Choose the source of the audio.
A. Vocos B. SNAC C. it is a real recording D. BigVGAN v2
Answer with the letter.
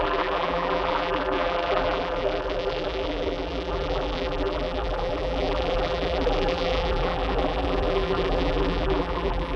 D